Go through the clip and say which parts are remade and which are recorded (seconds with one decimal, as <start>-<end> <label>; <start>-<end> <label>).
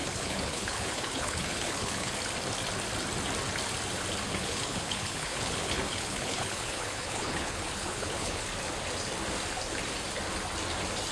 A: 0.0-2.1 remade; 2.1-4.3 recorded; 4.3-8.4 remade; 8.4-11.1 recorded